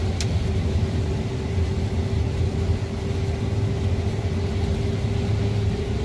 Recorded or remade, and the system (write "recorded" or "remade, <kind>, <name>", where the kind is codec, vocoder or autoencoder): recorded